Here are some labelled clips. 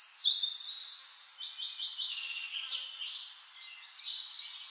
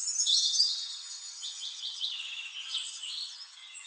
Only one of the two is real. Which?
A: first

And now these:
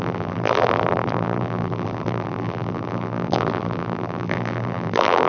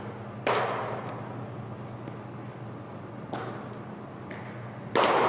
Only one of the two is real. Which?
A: second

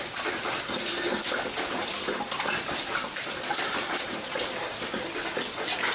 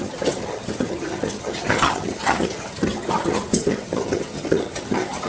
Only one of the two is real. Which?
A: first